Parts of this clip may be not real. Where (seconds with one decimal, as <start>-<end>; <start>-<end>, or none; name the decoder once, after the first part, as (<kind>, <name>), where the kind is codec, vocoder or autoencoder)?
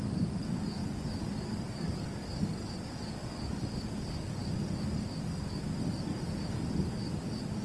none